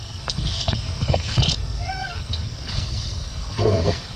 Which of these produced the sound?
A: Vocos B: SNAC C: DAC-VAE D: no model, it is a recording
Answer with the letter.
B